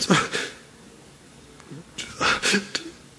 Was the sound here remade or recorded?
remade